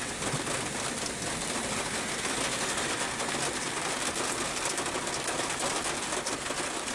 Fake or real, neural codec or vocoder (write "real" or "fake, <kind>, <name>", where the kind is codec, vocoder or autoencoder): real